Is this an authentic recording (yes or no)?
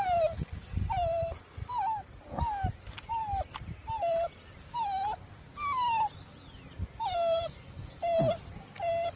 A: yes